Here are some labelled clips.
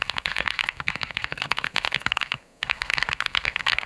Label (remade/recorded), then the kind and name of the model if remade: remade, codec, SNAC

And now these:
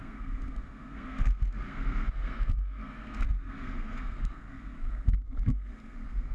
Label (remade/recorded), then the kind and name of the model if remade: remade, codec, SNAC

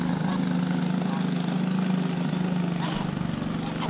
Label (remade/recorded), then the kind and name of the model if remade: recorded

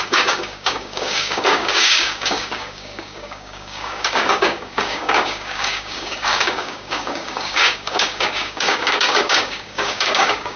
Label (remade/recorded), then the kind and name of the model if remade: remade, codec, DAC